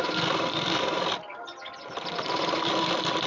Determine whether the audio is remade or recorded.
recorded